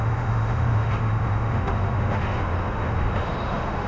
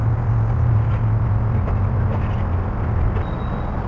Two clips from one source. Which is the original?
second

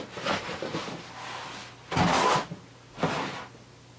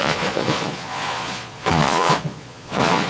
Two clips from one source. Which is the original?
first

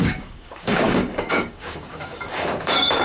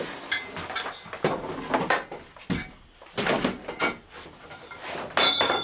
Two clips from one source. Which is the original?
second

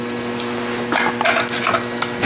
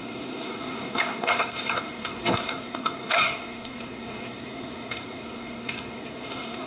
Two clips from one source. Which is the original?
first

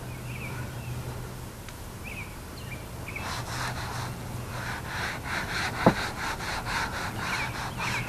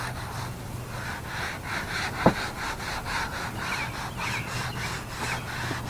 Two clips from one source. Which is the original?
first